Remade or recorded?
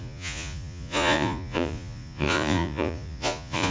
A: remade